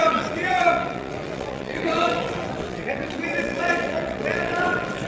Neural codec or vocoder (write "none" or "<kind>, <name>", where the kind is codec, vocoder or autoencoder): vocoder, WaveNeXt